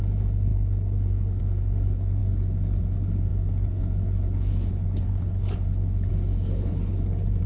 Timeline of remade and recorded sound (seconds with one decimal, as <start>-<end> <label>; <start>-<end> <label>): 0.0-7.5 remade